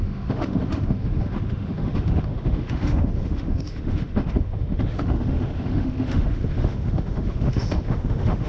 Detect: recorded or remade remade